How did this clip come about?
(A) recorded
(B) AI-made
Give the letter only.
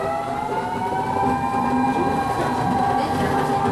A